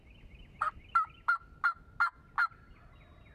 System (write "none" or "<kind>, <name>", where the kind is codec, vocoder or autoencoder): none